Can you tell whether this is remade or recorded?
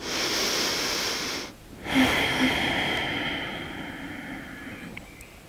recorded